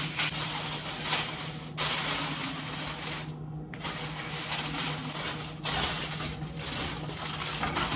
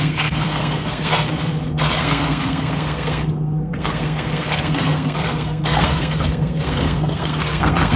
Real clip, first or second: first